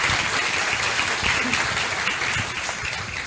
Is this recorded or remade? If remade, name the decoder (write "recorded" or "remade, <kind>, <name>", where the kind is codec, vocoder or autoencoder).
recorded